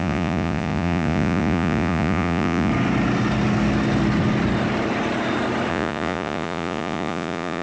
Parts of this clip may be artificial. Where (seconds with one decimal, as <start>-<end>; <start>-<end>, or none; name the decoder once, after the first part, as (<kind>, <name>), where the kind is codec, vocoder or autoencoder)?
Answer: 0.0-2.7 (vocoder, Vocos); 5.7-7.6